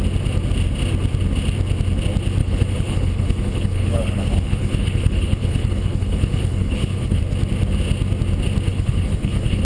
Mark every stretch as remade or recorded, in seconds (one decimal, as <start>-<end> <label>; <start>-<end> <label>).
0.0-2.4 recorded; 2.4-7.2 remade; 7.2-8.7 recorded; 8.7-9.6 remade

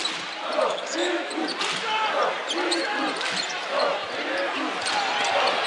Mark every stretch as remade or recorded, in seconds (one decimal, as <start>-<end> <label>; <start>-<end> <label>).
0.0-0.6 recorded; 0.6-1.3 remade; 1.3-5.7 recorded

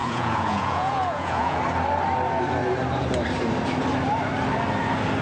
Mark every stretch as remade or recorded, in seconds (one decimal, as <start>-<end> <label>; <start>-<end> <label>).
0.0-1.6 remade; 1.6-5.2 recorded

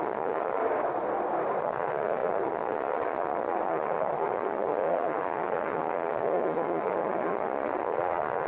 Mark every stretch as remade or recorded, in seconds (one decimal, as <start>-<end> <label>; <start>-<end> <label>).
0.0-0.6 remade; 0.6-1.6 recorded; 1.6-8.5 remade